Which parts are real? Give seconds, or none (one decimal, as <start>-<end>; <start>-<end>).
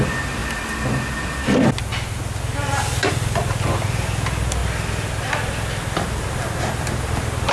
0.0-7.5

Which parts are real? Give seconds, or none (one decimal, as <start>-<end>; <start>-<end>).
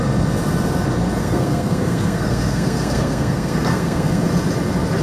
0.0-1.2; 4.2-5.0